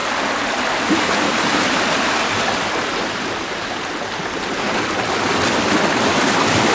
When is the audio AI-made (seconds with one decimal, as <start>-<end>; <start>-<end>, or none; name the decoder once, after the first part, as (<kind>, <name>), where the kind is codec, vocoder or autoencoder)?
none